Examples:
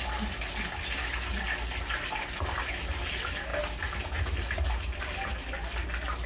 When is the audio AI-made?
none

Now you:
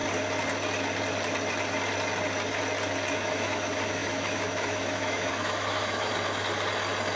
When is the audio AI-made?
3.1-6.1 (autoencoder, DAC-VAE)

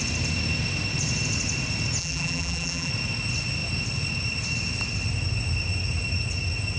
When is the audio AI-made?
2.0-2.9 (vocoder, BigVGAN v2)

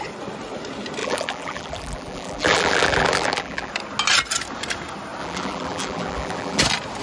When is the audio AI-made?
1.0-3.7 (vocoder, BigVGAN v2); 5.2-6.6

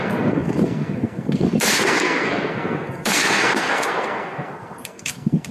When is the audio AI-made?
0.0-5.5 (codec, SNAC)

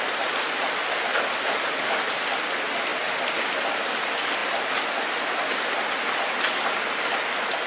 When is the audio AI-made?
none

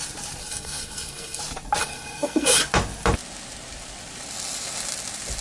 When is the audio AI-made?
0.4-1.4 (codec, SNAC); 1.8-2.6